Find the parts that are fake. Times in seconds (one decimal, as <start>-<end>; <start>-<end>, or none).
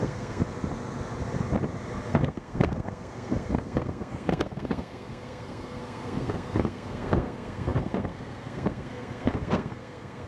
0.0-0.4; 2.1-10.3